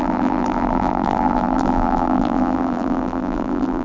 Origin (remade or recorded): remade